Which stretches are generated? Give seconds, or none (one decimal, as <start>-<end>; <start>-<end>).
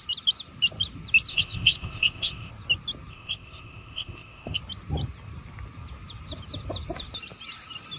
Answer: 1.3-2.5; 3.1-4.6